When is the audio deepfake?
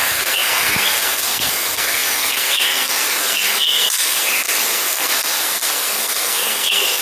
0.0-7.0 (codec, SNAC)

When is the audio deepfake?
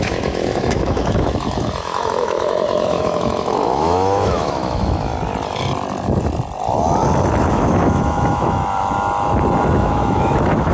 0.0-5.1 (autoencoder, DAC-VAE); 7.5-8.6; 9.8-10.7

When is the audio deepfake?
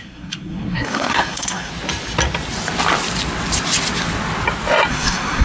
0.0-1.7 (codec, SNAC); 4.9-5.4